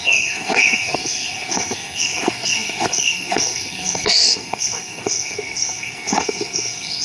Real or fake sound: fake